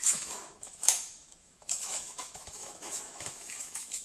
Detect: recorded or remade remade